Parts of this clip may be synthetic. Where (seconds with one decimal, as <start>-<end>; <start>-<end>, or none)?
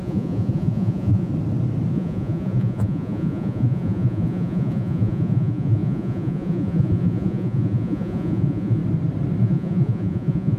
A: 0.0-1.3; 1.9-8.8; 9.4-10.6